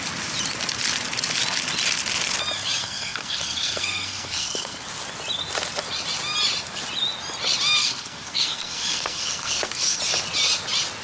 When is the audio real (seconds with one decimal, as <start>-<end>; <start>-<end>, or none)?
0.0-2.8; 4.8-7.8; 10.0-11.0